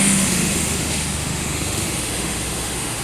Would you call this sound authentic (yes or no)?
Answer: no